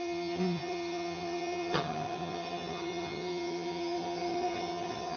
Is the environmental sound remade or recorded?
remade